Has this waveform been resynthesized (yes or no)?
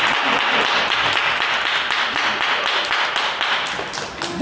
no